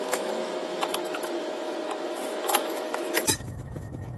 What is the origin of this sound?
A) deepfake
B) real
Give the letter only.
A